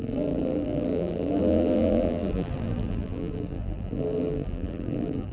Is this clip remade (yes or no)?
yes